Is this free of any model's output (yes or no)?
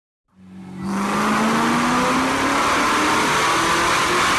yes